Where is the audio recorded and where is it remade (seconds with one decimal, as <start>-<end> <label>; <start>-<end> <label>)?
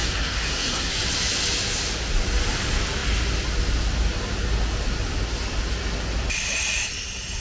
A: 0.0-0.9 remade; 0.9-7.4 recorded